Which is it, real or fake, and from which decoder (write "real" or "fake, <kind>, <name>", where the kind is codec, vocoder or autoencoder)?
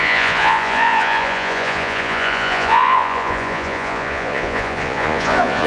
fake, vocoder, Vocos